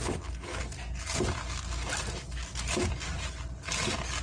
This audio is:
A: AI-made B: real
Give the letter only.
B